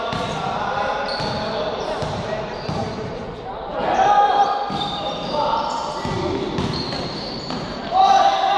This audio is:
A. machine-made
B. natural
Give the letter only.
B